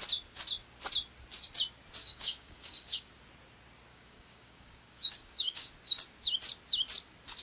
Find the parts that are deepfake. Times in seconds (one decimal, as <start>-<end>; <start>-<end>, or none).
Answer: 2.0-3.1; 3.9-5.7